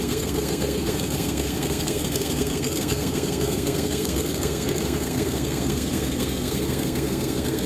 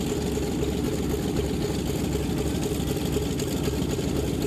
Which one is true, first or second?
second